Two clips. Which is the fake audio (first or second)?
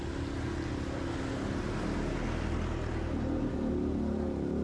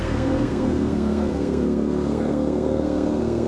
second